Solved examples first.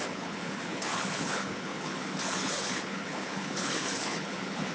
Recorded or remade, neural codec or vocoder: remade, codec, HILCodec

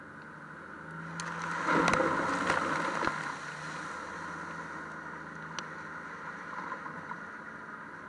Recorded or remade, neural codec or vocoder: recorded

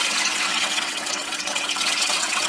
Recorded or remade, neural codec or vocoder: remade, vocoder, WaveNeXt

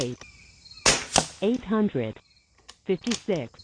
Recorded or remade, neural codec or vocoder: recorded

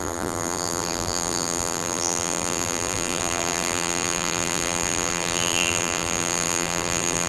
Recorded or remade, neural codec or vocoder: remade, vocoder, BigVGAN v2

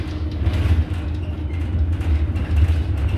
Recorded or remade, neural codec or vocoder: recorded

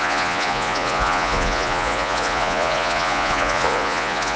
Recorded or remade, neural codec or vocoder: remade, vocoder, Vocos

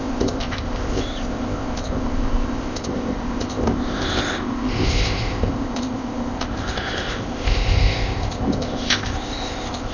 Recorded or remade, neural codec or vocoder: remade, codec, ZipCodec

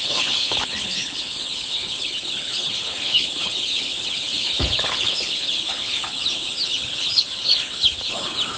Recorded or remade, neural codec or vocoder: remade, codec, HILCodec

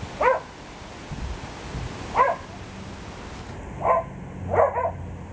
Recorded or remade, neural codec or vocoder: recorded